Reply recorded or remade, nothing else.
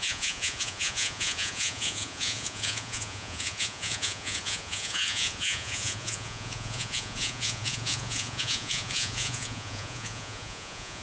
remade